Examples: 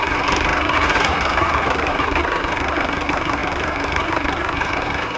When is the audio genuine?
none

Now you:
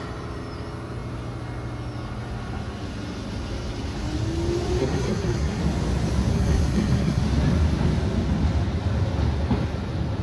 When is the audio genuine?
0.0-4.8; 5.6-6.3; 7.2-10.2